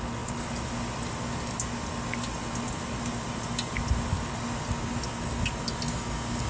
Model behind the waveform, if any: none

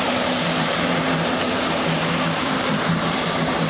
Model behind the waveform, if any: vocoder, BigVGAN v2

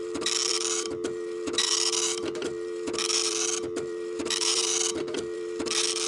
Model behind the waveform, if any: vocoder, BigVGAN v2